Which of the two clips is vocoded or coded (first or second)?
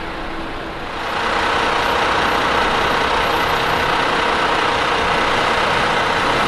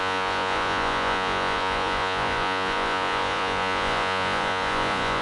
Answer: second